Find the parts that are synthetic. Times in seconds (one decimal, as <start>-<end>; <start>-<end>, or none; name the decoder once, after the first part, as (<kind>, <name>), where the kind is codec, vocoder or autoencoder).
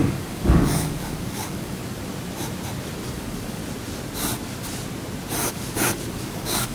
0.0-1.8 (codec, DAC); 3.1-3.6; 5.5-6.7